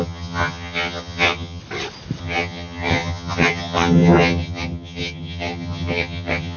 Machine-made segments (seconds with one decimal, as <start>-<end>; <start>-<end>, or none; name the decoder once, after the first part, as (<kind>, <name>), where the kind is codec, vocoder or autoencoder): 0.0-1.6 (vocoder, HiFi-GAN); 2.2-6.6